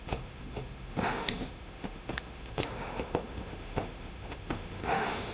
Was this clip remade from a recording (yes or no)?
yes